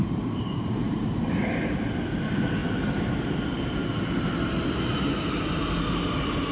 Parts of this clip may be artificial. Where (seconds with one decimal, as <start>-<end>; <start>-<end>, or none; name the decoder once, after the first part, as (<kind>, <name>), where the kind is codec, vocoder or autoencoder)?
0.0-1.2 (vocoder, BigVGAN v2)

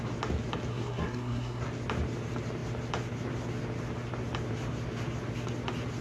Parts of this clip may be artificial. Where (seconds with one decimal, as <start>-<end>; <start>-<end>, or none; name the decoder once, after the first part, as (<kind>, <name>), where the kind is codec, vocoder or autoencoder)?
0.7-1.6 (codec, SNAC)

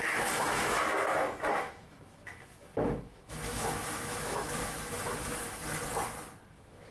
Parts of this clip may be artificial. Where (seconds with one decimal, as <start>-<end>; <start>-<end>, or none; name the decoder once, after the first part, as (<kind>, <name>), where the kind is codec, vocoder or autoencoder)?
0.0-5.6 (autoencoder, DAC-VAE); 6.5-6.9

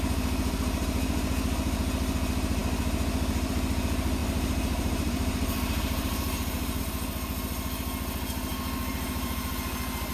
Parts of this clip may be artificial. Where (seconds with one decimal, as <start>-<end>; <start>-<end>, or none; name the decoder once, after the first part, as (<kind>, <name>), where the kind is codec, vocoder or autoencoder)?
4.2-6.8 (vocoder, BigVGAN v2); 8.5-9.5

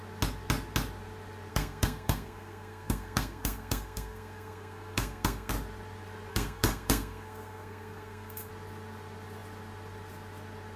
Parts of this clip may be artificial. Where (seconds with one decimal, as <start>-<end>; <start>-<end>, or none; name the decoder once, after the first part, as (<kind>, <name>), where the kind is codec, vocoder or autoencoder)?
1.5-5.5 (codec, SNAC); 6.3-8.5

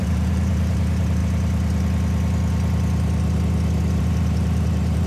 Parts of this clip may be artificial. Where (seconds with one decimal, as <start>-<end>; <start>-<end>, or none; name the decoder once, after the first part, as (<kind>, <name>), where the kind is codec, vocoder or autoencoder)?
0.0-1.2 (vocoder, BigVGAN v2); 4.0-5.1

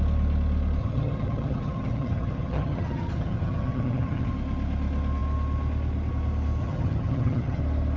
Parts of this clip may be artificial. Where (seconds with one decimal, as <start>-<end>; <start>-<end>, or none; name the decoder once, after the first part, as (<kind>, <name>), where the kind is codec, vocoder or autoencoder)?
0.8-4.3 (vocoder, HiFi-GAN); 6.6-7.6

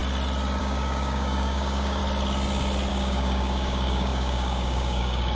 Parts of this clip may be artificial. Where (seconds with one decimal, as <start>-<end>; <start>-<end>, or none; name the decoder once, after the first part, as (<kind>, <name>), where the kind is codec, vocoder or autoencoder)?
0.6-2.0 (codec, DAC); 2.9-5.4